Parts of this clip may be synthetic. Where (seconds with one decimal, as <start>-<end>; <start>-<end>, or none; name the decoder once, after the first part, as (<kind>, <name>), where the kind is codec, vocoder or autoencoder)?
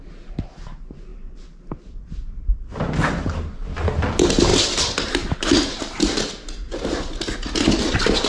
1.1-3.1 (vocoder, BigVGAN v2)